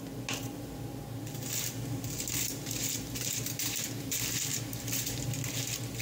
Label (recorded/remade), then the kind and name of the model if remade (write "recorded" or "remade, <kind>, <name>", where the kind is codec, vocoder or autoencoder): recorded